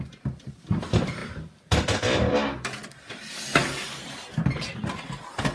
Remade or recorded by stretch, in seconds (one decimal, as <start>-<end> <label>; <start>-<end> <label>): 0.0-1.2 recorded; 1.2-2.0 remade; 2.0-5.5 recorded